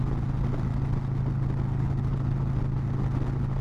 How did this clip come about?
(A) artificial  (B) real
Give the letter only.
B